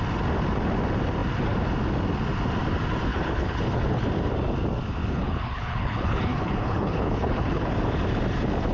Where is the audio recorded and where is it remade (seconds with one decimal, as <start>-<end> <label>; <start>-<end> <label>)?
0.0-3.1 recorded; 3.1-4.1 remade; 4.1-5.0 recorded; 5.0-7.7 remade; 7.7-8.7 recorded